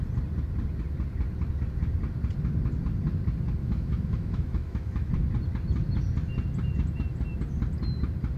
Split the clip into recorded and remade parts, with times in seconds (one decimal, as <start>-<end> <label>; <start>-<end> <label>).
0.0-3.6 recorded; 3.6-5.1 remade; 5.1-8.4 recorded